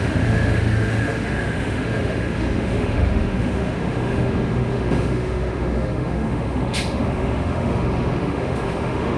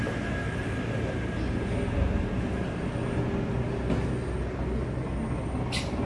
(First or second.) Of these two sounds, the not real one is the first